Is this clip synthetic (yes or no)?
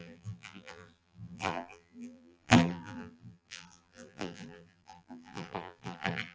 yes